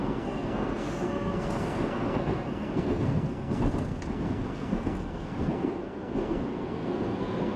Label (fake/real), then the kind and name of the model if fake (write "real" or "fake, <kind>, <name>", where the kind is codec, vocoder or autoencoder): fake, codec, SNAC